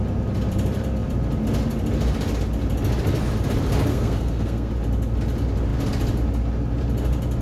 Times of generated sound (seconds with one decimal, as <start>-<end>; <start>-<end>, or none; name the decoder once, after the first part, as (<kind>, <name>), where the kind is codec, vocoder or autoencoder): 3.9-4.7 (codec, SNAC)